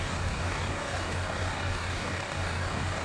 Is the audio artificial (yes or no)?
yes